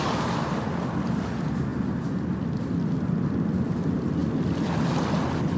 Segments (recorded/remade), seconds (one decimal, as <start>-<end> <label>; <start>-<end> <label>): 0.0-5.6 recorded